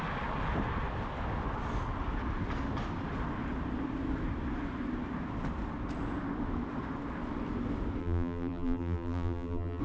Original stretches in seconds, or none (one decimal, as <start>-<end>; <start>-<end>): 0.0-8.0